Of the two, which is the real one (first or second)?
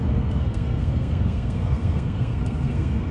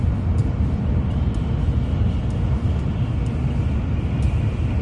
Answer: second